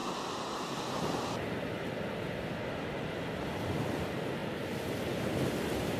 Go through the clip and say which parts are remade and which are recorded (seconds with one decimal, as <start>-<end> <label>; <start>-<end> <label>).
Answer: 0.0-6.0 recorded